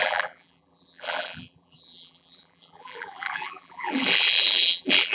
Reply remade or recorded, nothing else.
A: remade